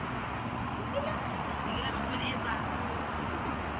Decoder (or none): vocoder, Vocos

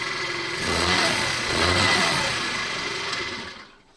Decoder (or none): vocoder, Vocos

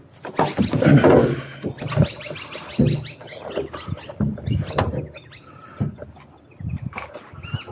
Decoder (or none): none